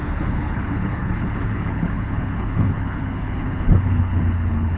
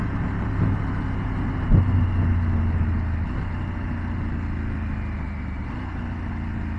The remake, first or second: first